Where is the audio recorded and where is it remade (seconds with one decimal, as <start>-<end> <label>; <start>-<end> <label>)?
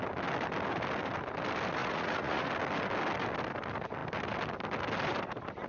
0.0-1.8 recorded; 1.8-2.5 remade; 2.5-5.7 recorded